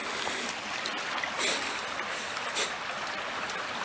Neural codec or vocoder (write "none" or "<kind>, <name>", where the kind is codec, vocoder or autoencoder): none